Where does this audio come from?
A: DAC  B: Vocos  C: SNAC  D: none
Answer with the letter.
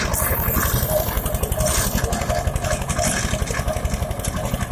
D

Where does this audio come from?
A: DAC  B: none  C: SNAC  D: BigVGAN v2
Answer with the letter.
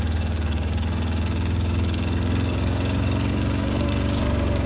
A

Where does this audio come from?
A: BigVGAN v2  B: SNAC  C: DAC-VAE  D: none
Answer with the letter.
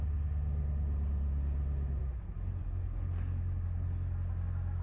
D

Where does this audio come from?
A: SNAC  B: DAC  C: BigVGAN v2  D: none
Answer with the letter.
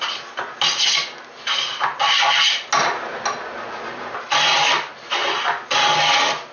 D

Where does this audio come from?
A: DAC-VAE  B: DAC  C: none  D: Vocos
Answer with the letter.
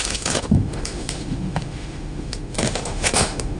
A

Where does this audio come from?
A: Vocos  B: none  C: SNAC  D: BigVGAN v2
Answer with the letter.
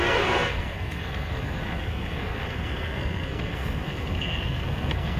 C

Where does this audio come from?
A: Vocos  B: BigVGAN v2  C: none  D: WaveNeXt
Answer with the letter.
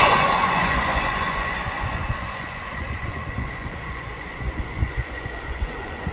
A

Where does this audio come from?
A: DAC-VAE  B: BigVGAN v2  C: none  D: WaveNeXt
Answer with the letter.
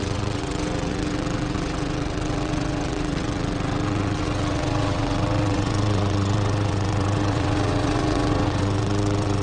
D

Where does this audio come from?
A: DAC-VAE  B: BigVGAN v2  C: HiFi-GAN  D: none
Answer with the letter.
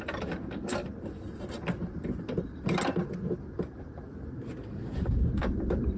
D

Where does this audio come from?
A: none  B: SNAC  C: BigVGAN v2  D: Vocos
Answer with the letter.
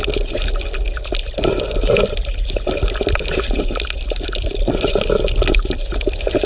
A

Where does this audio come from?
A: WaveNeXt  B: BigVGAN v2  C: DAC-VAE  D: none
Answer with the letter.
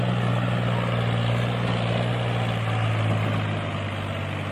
D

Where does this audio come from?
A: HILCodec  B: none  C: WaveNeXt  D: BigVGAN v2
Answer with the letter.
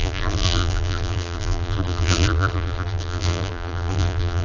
D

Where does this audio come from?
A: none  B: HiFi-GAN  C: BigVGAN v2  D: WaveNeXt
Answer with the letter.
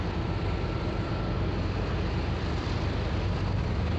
C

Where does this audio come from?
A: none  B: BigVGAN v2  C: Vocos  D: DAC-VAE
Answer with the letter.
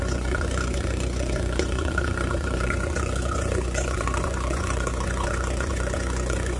C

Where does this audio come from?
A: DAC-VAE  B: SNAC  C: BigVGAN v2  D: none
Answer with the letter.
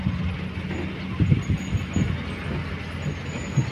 D